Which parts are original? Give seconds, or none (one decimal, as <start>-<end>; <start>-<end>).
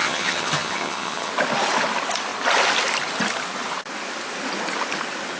1.3-5.4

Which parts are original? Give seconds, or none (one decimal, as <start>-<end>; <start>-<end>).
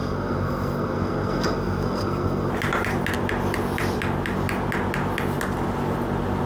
2.5-6.5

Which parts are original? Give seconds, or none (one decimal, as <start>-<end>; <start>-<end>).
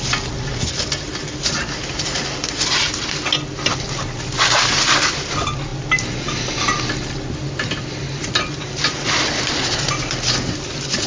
0.0-11.1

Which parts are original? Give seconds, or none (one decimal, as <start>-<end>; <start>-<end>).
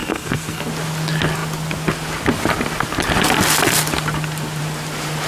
0.7-5.3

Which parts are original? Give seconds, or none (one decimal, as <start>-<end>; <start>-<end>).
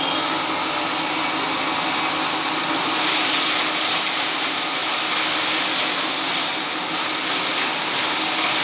0.0-8.6